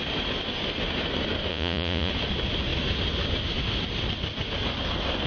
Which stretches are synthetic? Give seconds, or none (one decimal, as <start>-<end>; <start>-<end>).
1.5-2.1